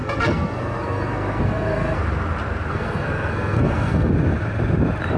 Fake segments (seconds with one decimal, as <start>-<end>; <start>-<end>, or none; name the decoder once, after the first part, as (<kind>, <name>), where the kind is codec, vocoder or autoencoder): 0.0-2.0 (codec, SNAC); 2.7-4.1